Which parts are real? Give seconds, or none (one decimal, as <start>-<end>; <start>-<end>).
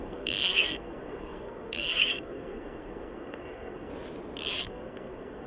3.9-4.6